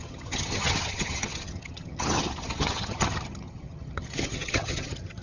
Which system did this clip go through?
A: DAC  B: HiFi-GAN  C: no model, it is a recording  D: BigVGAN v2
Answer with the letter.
B